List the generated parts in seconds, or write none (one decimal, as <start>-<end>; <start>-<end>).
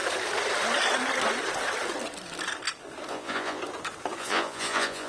3.1-3.6; 4.2-5.1